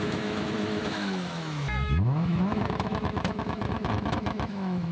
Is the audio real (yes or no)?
no